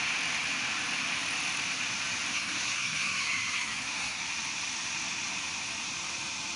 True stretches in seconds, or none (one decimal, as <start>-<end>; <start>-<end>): 0.0-2.3; 4.2-6.6